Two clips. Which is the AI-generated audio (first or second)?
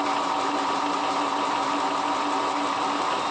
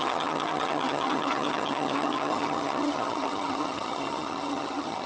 second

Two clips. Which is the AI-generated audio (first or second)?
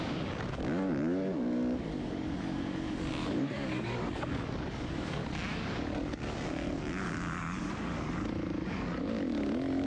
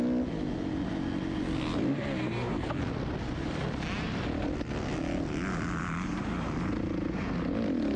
first